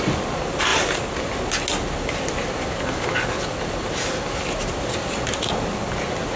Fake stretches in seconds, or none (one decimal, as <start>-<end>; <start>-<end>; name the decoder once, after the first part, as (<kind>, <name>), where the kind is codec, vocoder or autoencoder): none